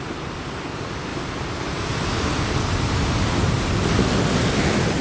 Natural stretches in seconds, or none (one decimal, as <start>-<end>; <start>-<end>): 0.0-5.0